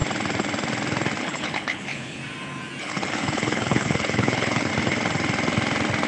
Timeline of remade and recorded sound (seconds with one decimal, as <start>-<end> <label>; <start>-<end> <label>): 0.0-1.2 recorded; 1.2-2.2 remade; 2.2-2.8 recorded; 2.8-4.7 remade; 4.7-6.1 recorded